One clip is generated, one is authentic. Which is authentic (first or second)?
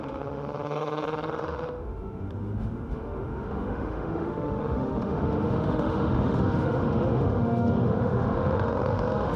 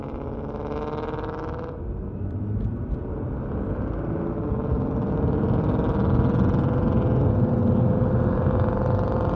second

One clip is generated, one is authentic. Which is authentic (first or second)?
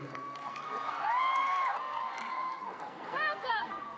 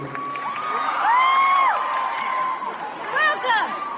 second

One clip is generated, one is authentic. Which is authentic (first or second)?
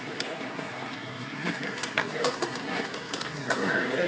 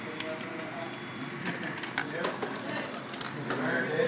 second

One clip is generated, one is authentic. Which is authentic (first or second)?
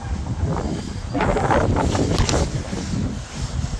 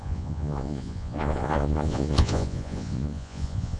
first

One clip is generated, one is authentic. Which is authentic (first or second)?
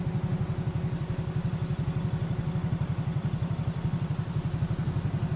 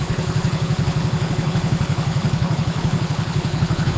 first